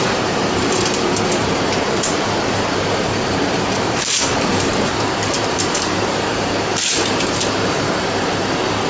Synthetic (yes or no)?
yes